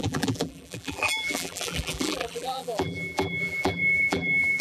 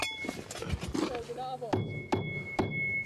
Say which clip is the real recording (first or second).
second